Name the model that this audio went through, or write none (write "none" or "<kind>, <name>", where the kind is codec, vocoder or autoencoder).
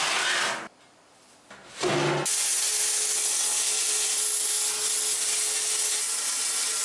none